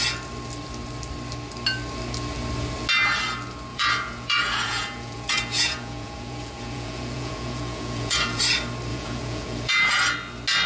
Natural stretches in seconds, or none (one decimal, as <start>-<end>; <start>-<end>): 0.0-3.7; 8.4-8.9; 9.9-10.7